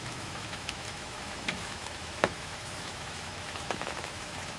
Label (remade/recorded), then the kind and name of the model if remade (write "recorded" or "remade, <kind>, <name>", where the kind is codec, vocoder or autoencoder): remade, autoencoder, DAC-VAE